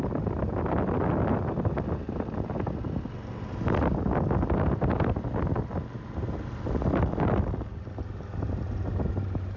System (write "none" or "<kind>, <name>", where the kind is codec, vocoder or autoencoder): none